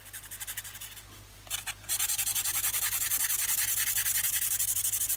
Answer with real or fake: real